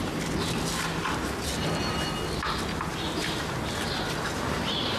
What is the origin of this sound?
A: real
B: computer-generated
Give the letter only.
A